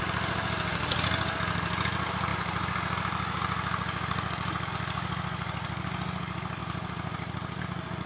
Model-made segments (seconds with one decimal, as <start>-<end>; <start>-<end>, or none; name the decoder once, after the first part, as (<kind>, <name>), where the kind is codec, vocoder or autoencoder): 6.6-7.6 (vocoder, BigVGAN v2)